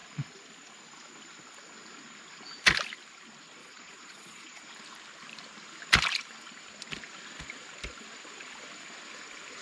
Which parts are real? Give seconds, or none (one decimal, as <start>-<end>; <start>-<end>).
0.0-3.6; 4.6-9.6